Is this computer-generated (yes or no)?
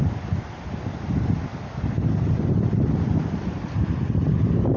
no